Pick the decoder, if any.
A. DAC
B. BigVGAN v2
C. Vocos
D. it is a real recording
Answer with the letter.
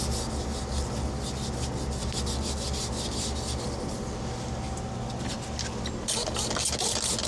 D